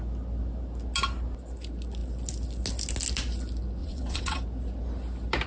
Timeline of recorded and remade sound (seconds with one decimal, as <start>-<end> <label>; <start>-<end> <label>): 0.0-3.8 recorded; 3.8-4.4 remade; 4.4-5.5 recorded